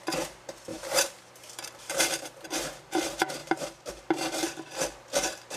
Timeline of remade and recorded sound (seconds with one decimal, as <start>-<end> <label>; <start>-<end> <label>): 0.0-0.7 recorded; 0.7-2.8 remade; 2.8-3.4 recorded; 3.4-3.9 remade; 3.9-5.6 recorded